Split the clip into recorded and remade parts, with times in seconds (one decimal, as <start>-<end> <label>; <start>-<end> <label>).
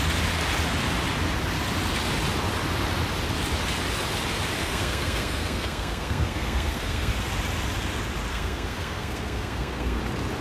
0.0-4.6 recorded; 4.6-7.1 remade; 7.1-8.3 recorded; 8.3-10.0 remade; 10.0-10.4 recorded